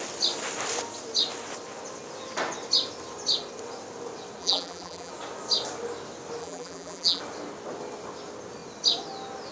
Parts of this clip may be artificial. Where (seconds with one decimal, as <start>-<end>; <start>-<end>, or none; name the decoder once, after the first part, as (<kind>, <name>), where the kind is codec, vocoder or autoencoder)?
4.4-5.1 (vocoder, BigVGAN v2); 6.4-7.2